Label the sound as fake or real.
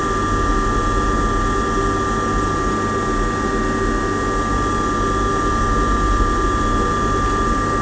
real